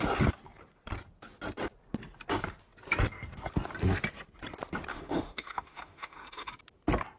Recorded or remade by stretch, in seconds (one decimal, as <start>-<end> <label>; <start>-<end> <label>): 0.0-4.9 recorded; 4.9-6.5 remade; 6.5-7.2 recorded